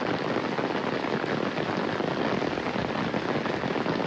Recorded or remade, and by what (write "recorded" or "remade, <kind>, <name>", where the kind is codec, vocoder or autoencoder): recorded